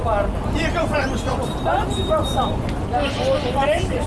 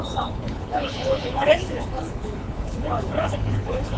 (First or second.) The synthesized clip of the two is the second